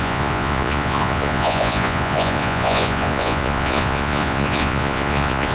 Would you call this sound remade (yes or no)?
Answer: yes